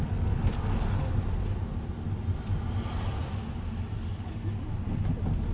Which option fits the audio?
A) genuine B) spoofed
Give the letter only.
A